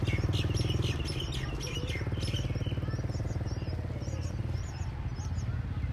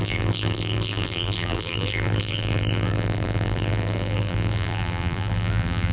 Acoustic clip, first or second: first